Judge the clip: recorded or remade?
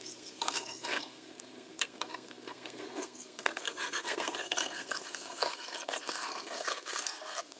remade